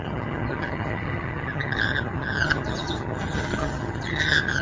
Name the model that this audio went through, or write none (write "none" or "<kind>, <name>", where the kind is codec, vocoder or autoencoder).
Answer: vocoder, HiFi-GAN